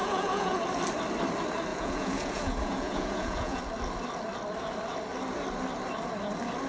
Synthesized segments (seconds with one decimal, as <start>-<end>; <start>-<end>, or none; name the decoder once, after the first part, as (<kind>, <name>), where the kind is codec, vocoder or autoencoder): 0.0-0.6 (vocoder, Vocos); 1.7-3.6